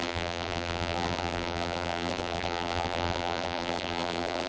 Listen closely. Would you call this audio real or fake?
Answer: fake